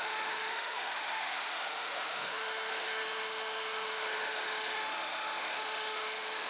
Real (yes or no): no